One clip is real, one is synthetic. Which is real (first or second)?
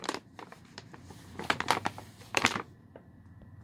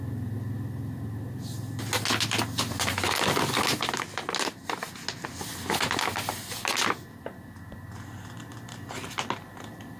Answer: second